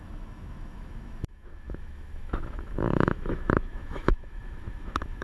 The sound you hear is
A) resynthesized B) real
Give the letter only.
A